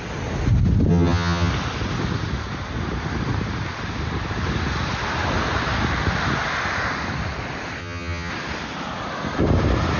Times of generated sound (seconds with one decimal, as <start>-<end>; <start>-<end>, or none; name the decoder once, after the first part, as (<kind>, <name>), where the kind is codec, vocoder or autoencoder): 0.9-1.5 (vocoder, HiFi-GAN); 7.8-8.3